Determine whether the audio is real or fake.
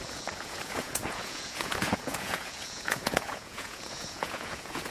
fake